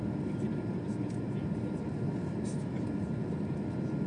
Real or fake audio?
real